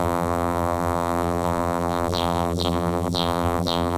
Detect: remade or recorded remade